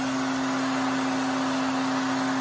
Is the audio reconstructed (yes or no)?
no